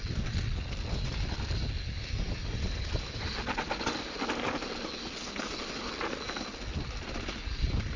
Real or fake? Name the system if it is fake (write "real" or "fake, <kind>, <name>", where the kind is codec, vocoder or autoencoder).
real